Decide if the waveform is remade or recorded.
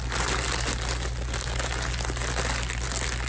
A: recorded